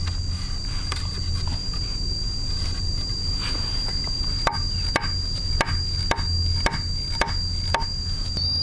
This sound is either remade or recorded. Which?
recorded